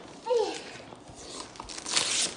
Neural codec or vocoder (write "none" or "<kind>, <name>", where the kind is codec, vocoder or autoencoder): none